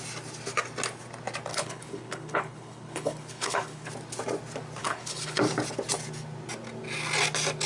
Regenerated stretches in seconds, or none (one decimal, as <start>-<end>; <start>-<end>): 1.5-3.9; 4.8-5.4